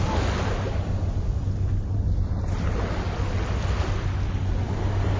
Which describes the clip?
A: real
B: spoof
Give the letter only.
A